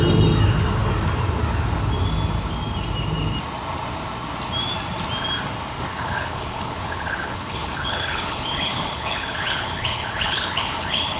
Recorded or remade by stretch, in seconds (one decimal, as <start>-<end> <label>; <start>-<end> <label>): 0.0-5.9 recorded; 5.9-11.2 remade